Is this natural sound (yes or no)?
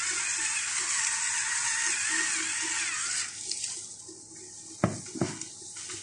yes